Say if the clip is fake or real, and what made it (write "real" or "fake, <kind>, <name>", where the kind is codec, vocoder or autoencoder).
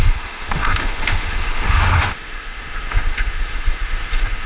fake, autoencoder, DAC-VAE